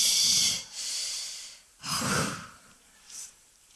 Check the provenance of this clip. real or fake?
fake